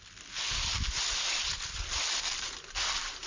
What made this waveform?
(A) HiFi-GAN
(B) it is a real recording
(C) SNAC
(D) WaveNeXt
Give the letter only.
B